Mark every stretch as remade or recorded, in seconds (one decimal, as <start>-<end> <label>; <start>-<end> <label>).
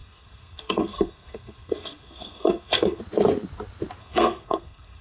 0.0-3.0 remade; 3.0-4.0 recorded; 4.0-5.0 remade